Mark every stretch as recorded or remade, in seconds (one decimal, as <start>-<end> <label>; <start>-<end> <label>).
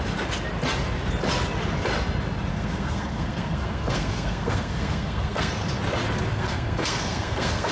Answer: 0.0-2.5 recorded; 2.5-5.5 remade; 5.5-6.3 recorded; 6.3-7.7 remade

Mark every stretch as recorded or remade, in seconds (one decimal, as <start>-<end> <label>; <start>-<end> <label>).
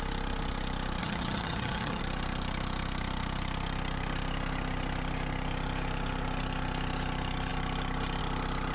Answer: 0.0-1.0 recorded; 1.0-2.0 remade; 2.0-8.7 recorded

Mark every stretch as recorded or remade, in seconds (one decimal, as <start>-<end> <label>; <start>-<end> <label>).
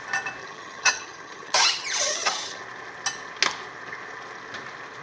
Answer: 0.0-0.4 recorded; 0.4-2.6 remade; 2.6-5.0 recorded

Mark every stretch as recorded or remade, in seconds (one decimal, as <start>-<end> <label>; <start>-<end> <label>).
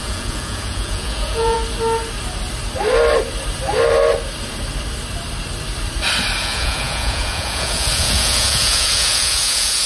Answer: 0.0-1.6 remade; 1.6-6.4 recorded; 6.4-9.9 remade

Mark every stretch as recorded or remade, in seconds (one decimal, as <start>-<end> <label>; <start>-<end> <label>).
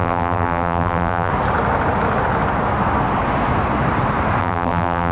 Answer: 0.0-1.3 remade; 1.3-4.4 recorded; 4.4-5.1 remade